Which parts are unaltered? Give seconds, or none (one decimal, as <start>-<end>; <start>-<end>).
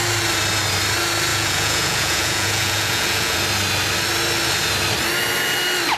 0.0-1.3; 3.4-6.0